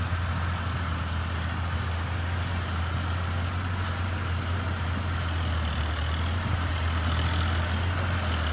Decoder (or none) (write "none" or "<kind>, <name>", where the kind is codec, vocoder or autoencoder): none